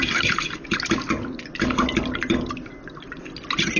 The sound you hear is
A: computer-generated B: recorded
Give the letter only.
B